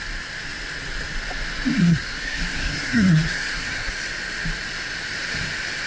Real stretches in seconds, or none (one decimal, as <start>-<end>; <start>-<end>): 0.0-1.8; 3.9-5.9